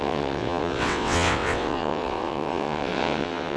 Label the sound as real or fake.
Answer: fake